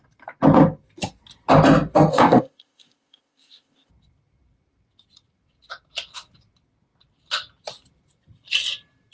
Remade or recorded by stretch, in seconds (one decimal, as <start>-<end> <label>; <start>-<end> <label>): 0.0-2.1 recorded; 2.1-3.9 remade; 3.9-9.1 recorded